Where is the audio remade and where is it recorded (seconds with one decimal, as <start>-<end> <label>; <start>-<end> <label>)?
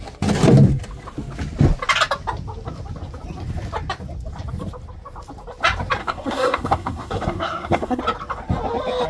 0.0-6.0 recorded; 6.0-8.0 remade; 8.0-9.1 recorded